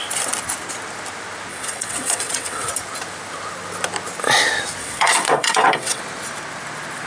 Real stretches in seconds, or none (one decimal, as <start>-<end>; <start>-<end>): 0.0-1.5; 2.7-4.8; 6.0-7.1